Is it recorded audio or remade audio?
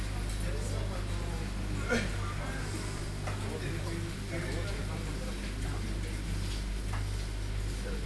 recorded